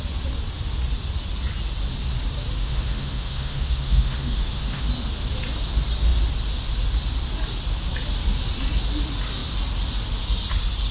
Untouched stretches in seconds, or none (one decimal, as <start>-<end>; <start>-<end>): 0.0-2.6; 4.9-10.9